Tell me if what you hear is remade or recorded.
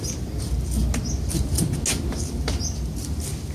recorded